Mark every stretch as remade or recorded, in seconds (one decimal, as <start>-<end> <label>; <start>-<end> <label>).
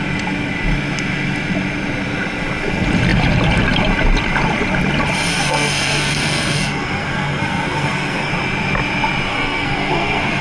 0.0-5.3 recorded; 5.3-8.3 remade; 8.3-9.3 recorded; 9.3-10.4 remade